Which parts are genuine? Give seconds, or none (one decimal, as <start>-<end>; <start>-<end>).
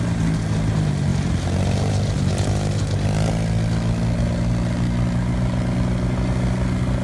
0.0-7.0